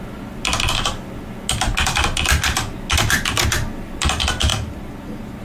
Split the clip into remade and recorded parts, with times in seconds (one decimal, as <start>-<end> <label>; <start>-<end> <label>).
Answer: 0.0-4.5 recorded; 4.5-5.4 remade